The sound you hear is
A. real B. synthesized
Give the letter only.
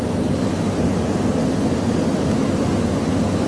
A